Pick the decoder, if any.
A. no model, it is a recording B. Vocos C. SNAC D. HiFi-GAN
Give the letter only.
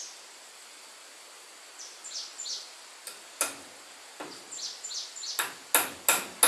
A